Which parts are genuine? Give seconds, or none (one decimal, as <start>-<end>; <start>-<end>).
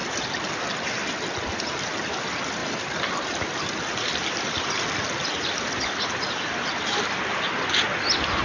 0.0-2.6; 7.1-8.4